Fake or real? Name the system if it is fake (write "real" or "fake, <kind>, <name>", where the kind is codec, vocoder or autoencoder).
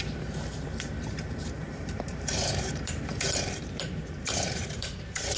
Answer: fake, vocoder, BigVGAN v2